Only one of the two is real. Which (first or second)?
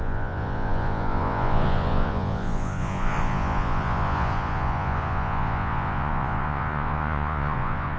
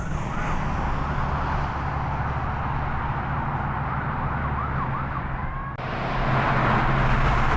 second